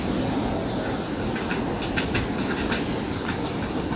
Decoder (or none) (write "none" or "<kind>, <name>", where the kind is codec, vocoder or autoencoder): none